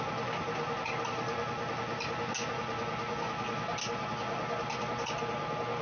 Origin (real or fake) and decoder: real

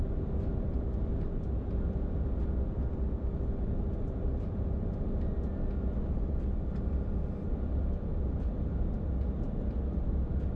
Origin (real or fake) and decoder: real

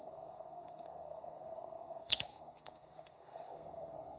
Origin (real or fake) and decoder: fake, codec, SNAC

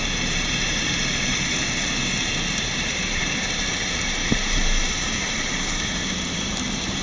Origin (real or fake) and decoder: fake, vocoder, BigVGAN v2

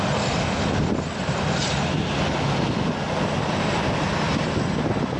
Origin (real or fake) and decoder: real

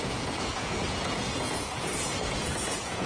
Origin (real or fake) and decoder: fake, vocoder, Vocos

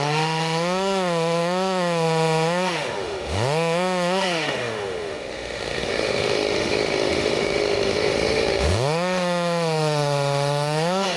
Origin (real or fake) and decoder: fake, autoencoder, DAC-VAE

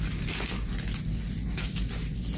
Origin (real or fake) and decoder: real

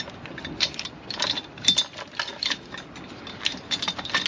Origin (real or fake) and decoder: real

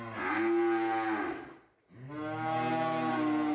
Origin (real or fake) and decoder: real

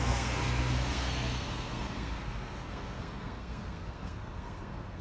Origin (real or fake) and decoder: fake, codec, SNAC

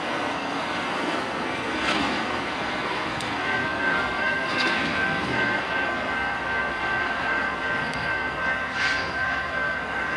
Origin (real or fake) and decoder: fake, codec, SNAC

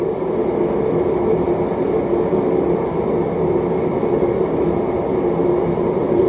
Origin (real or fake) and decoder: real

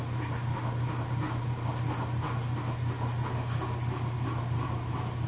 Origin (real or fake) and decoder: real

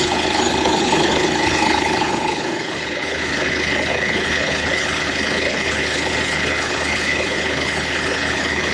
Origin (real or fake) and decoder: fake, codec, HILCodec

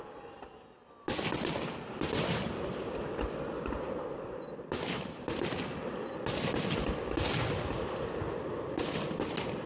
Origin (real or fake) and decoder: real